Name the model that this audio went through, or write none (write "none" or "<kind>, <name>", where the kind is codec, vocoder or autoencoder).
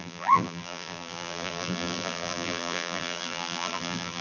vocoder, BigVGAN v2